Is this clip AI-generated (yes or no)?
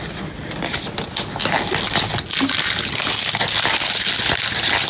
no